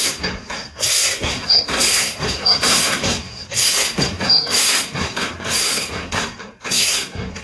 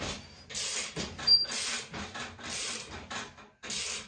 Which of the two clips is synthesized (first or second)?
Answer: first